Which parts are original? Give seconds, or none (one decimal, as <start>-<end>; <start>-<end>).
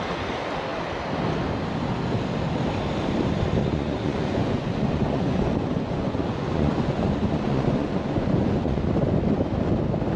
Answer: 0.0-3.6; 8.8-10.2